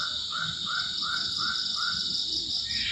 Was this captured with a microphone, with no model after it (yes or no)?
yes